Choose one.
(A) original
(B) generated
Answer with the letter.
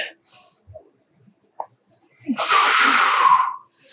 B